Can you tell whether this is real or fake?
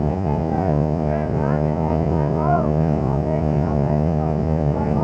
fake